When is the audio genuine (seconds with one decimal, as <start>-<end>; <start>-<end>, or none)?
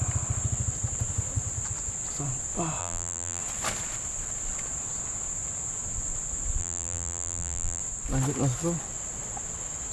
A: 0.0-2.8; 3.4-6.6; 7.8-9.9